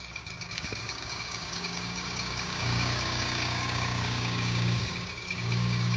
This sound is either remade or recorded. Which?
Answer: remade